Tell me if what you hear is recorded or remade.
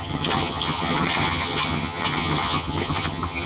remade